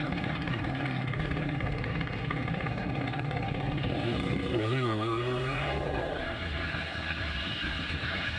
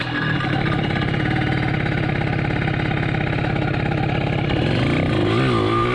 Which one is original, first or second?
second